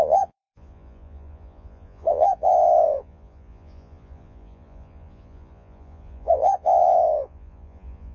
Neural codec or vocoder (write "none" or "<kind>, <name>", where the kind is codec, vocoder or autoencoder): vocoder, Vocos